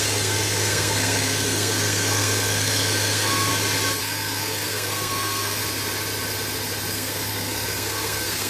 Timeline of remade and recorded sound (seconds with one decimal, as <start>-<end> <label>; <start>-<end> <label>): 0.0-3.5 remade; 3.5-4.0 recorded; 4.0-5.6 remade; 5.6-6.9 recorded; 6.9-8.5 remade